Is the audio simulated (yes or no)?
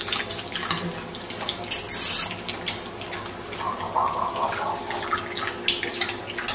no